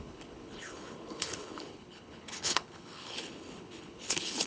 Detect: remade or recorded remade